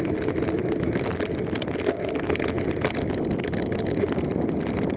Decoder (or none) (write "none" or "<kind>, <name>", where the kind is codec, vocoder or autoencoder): none